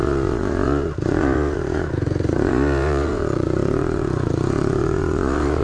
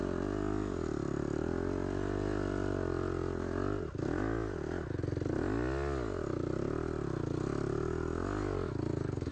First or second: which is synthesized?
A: first